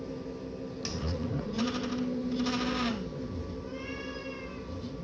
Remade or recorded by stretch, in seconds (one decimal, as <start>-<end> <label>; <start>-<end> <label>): 0.0-0.9 recorded; 0.9-1.6 remade; 1.6-5.0 recorded